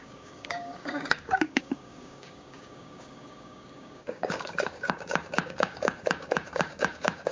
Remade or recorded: remade